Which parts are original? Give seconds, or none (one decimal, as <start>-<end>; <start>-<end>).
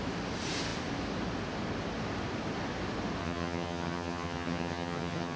0.0-3.2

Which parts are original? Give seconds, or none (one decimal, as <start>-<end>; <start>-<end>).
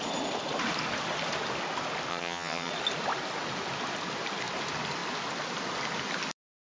0.0-2.1; 2.7-6.7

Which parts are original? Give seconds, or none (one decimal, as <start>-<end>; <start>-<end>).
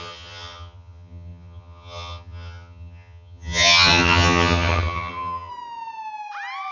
5.5-6.7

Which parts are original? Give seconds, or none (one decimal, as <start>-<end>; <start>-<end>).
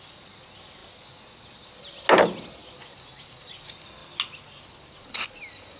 0.0-5.8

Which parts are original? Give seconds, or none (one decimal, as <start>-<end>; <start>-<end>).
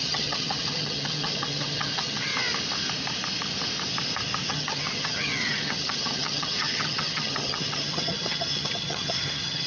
2.3-4.5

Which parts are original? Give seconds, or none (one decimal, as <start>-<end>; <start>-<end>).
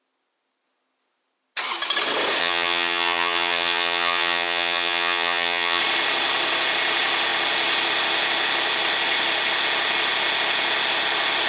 0.0-2.4; 5.8-11.5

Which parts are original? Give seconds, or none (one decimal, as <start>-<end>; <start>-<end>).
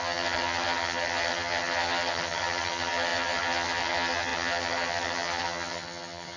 none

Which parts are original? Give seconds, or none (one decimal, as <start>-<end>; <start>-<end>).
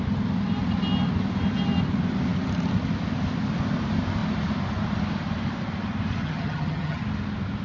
0.0-6.2; 7.0-7.6